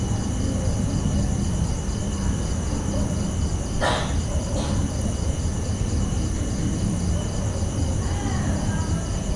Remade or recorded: recorded